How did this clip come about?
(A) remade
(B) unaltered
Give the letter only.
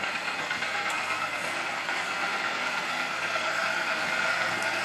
A